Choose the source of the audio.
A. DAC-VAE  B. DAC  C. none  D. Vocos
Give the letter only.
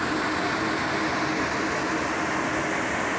C